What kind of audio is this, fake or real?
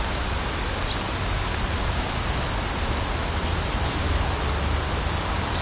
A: real